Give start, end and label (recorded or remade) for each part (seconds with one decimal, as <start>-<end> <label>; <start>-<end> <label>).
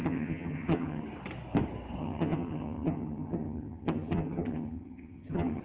0.0-1.0 remade; 1.0-2.0 recorded; 2.0-5.6 remade